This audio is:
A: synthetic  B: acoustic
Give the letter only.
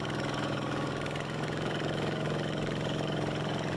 A